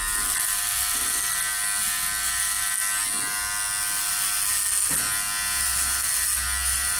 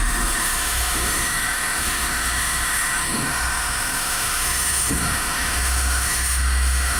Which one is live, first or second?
first